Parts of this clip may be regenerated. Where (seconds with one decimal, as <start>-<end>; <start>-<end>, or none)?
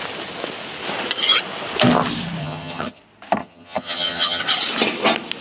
2.4-3.0; 3.4-4.4